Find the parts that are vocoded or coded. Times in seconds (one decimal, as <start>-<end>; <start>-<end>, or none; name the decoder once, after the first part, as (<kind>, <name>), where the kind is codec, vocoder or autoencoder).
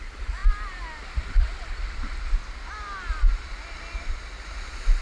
none